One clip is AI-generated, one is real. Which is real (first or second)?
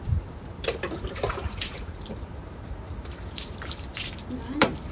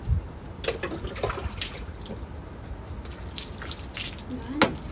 second